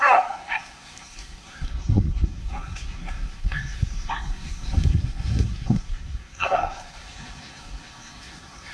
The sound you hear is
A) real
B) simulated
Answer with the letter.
B